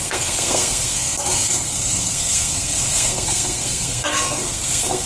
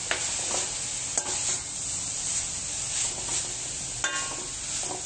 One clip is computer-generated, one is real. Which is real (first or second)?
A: second